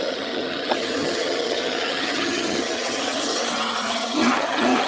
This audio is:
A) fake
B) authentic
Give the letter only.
A